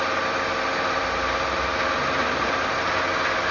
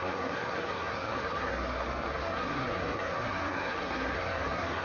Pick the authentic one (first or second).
first